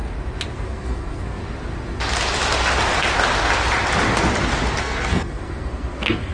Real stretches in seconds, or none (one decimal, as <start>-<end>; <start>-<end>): 0.0-0.5; 1.4-4.8